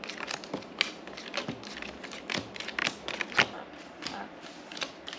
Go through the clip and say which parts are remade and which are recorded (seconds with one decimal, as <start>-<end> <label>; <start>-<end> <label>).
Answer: 0.0-5.2 recorded